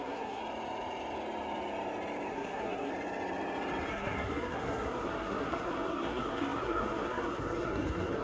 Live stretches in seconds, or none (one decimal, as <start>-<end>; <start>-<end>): 0.4-2.3; 2.9-3.9